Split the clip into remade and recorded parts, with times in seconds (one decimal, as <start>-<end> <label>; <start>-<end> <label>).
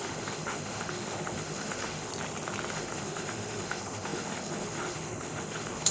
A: 0.0-2.1 remade; 2.1-2.7 recorded; 2.7-5.9 remade